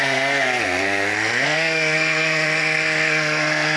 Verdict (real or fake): fake